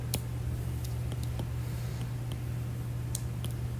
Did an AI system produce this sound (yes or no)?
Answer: no